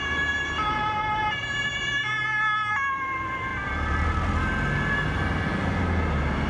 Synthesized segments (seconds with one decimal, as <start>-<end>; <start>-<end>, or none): none